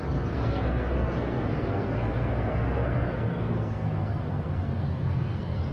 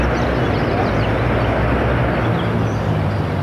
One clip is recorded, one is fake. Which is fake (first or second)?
first